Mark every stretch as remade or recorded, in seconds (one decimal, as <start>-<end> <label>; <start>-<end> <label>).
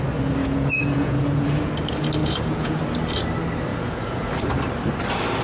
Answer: 0.0-0.4 recorded; 0.4-1.7 remade; 1.7-2.2 recorded; 2.2-2.8 remade; 2.8-3.7 recorded; 3.7-4.3 remade; 4.3-5.4 recorded